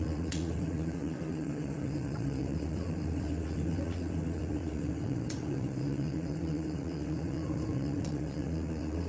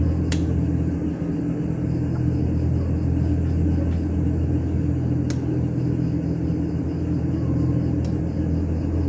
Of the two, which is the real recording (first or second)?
second